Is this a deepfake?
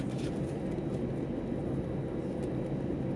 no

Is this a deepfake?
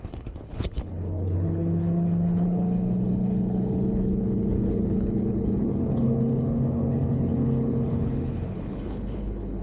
yes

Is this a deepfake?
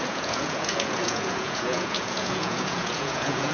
yes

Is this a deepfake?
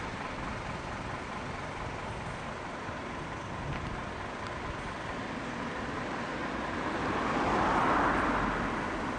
no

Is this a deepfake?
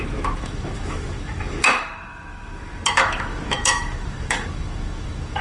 yes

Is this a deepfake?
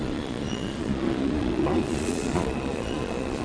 yes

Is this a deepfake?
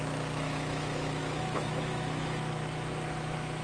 yes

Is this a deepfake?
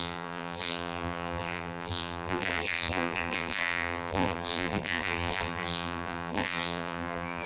yes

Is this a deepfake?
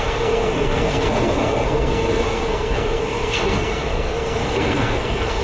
yes